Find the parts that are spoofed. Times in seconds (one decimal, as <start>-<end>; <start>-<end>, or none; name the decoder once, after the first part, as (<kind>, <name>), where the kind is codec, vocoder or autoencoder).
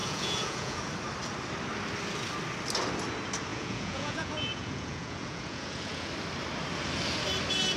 0.0-0.8 (vocoder, Vocos); 3.5-6.1